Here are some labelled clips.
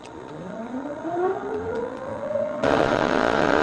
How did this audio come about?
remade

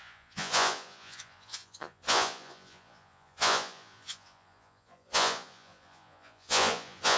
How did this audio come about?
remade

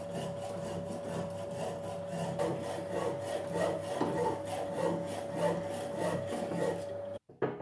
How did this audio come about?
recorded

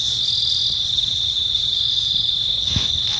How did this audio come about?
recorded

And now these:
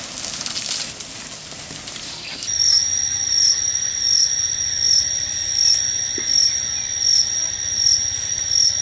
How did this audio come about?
recorded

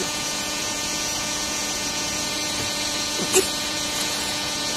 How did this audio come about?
remade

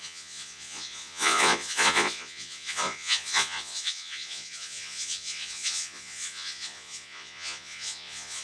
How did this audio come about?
remade